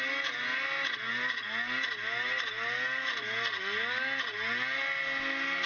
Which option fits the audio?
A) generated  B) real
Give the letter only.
B